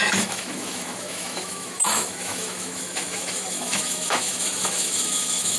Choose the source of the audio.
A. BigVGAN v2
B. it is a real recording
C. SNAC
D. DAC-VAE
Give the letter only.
D